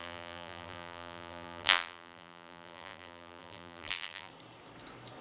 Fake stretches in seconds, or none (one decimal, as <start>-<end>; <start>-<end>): 0.0-4.3